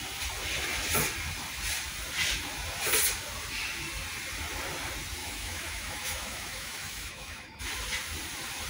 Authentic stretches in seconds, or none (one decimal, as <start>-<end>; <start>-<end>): 0.0-5.2; 7.6-8.7